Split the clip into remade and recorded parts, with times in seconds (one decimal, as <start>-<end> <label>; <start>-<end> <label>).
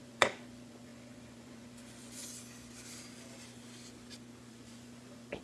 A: 0.0-2.2 remade; 2.2-4.5 recorded; 4.5-5.4 remade